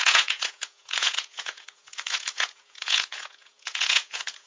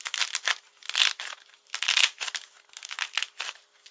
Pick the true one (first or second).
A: second